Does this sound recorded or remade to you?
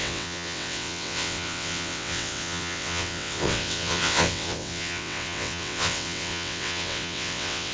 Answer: remade